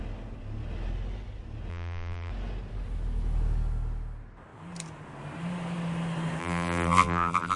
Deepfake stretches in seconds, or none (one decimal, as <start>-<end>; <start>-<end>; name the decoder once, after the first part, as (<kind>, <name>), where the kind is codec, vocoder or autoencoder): 1.7-2.3 (vocoder, BigVGAN v2); 6.4-7.6